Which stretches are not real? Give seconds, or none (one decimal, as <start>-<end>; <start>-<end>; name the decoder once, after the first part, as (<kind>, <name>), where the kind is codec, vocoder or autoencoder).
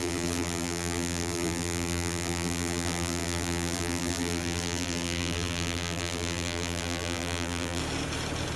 0.0-7.8 (vocoder, BigVGAN v2)